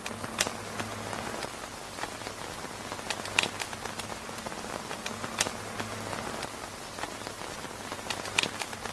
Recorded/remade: recorded